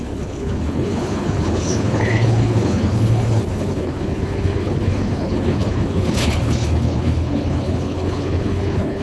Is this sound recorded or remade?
remade